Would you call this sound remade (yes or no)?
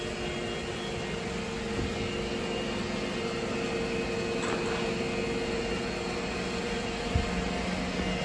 no